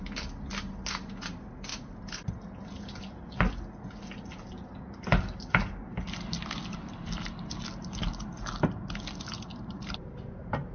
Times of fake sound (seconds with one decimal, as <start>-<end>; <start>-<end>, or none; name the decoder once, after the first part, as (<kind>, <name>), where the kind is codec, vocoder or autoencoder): 1.7-2.3 (vocoder, BigVGAN v2); 9.5-10.7